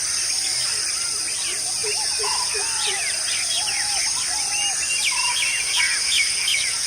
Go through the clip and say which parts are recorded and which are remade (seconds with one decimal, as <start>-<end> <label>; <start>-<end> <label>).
0.0-5.5 recorded; 5.5-6.9 remade